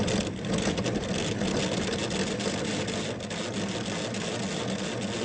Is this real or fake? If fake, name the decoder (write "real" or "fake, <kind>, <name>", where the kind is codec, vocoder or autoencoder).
real